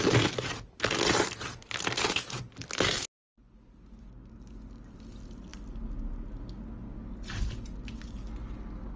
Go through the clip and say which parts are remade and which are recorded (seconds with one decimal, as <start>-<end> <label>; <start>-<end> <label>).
0.0-9.0 recorded